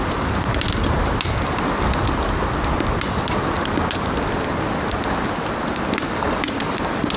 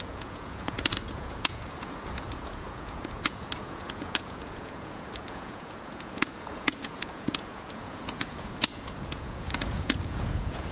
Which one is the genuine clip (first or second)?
first